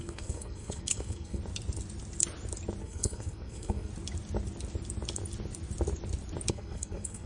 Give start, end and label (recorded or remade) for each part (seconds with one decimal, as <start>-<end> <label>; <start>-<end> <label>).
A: 0.0-1.4 remade; 1.4-2.8 recorded; 2.8-3.9 remade; 3.9-6.5 recorded; 6.5-7.3 remade